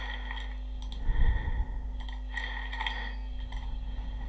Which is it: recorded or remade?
recorded